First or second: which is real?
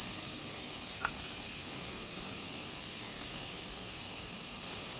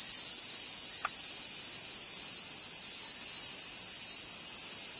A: second